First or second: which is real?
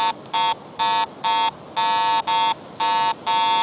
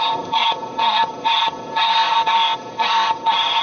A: first